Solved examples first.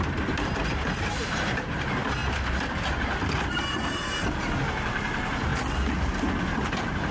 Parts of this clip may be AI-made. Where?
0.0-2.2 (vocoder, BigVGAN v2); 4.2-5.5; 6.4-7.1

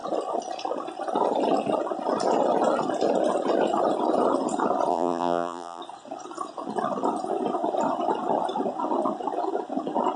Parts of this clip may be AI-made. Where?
4.9-5.8 (vocoder, BigVGAN v2)